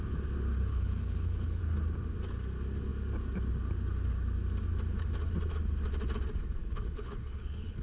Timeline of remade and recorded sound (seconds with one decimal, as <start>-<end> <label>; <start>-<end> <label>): 0.0-0.7 recorded; 0.7-1.6 remade; 1.6-6.6 recorded; 6.6-7.8 remade